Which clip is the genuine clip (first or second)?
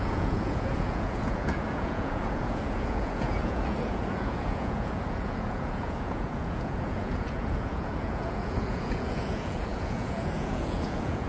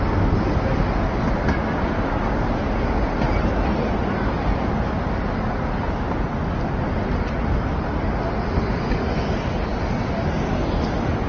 second